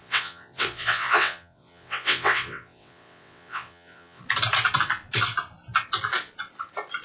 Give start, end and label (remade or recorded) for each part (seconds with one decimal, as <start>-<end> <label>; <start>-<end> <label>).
0.0-4.2 remade; 4.2-7.0 recorded